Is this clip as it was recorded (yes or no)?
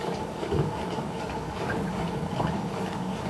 no